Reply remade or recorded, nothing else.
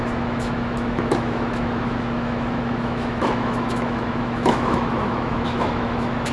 remade